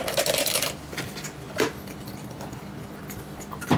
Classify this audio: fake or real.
real